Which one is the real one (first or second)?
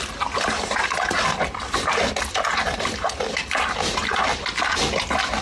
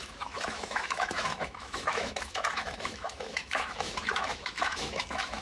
first